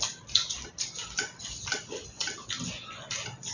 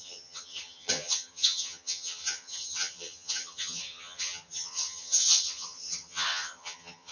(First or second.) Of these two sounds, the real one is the first